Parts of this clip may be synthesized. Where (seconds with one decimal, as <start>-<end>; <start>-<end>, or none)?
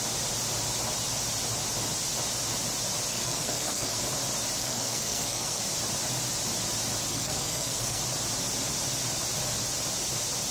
3.1-4.0; 4.6-5.6; 7.1-8.0